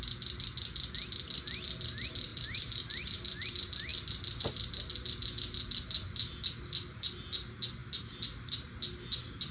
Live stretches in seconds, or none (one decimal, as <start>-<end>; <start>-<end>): 0.0-2.3; 3.5-9.5